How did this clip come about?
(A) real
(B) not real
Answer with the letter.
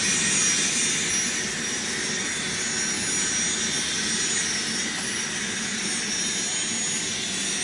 A